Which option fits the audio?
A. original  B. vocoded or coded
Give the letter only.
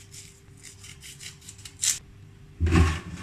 A